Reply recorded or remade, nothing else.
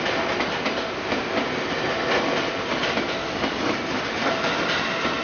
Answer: recorded